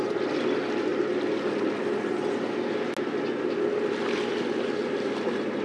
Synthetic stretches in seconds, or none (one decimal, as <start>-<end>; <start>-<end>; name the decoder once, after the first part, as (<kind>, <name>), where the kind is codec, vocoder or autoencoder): none